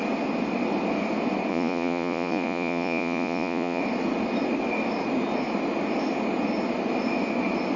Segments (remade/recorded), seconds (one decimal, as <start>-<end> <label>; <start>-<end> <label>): 0.0-1.5 recorded; 1.5-3.8 remade; 3.8-7.8 recorded